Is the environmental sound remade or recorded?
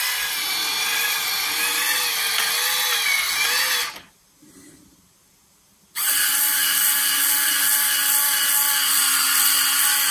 recorded